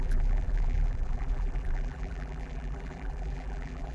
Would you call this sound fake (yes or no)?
yes